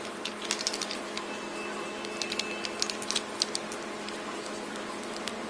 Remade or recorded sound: recorded